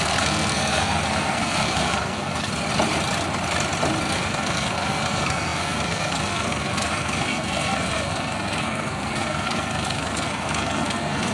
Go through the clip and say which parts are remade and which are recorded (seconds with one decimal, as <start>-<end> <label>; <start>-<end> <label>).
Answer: 0.0-2.5 remade; 2.5-4.0 recorded; 4.0-11.3 remade